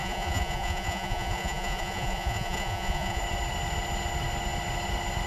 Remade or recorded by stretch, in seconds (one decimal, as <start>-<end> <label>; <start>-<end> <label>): 0.0-3.2 remade; 3.2-5.3 recorded